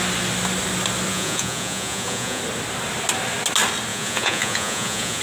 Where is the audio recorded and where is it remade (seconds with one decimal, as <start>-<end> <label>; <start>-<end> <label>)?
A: 0.0-1.1 recorded; 1.1-2.4 remade; 2.4-3.9 recorded; 3.9-5.2 remade